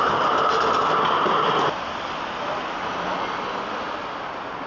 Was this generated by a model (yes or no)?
no